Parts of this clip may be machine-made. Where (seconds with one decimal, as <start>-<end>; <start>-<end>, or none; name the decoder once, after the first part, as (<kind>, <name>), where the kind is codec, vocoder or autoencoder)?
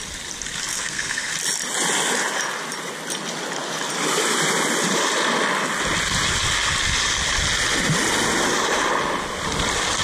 0.7-1.3 (codec, SNAC)